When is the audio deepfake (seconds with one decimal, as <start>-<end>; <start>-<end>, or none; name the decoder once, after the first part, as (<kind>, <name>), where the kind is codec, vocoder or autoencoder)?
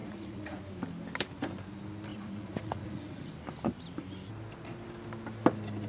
0.0-0.6 (vocoder, Vocos); 2.1-3.3